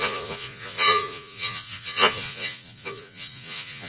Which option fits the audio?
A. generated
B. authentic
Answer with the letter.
A